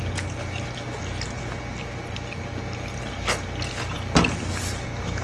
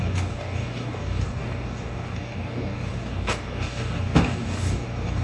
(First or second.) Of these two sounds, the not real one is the second